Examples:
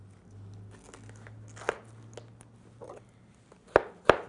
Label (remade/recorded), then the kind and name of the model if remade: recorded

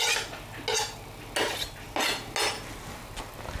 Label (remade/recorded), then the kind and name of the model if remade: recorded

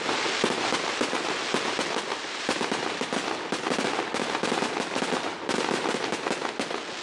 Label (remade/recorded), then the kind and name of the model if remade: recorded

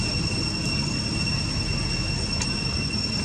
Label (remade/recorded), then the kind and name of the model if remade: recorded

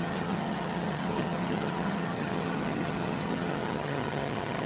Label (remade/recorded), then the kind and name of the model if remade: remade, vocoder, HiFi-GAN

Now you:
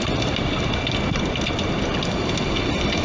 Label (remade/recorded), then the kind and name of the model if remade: recorded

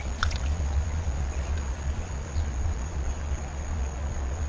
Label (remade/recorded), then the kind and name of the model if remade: remade, vocoder, Vocos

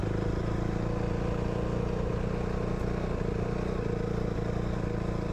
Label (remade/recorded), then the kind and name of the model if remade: recorded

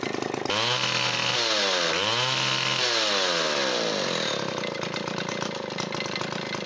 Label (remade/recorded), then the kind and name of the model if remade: recorded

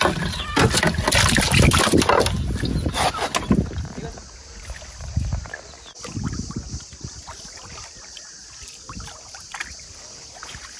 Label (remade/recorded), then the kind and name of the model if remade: recorded